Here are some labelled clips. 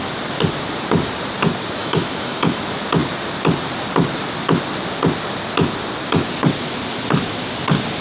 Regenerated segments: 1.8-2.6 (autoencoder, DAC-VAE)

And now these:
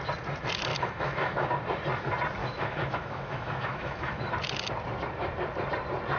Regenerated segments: 0.7-1.5 (autoencoder, DAC-VAE); 2.4-4.3

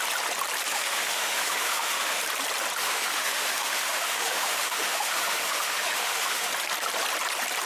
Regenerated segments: 0.7-2.2 (autoencoder, DAC-VAE); 2.8-6.5